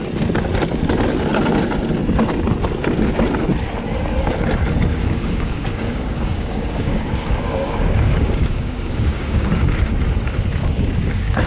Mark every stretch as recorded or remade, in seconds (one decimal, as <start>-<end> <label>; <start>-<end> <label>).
0.0-4.9 recorded; 4.9-9.9 remade; 9.9-10.6 recorded; 10.6-11.5 remade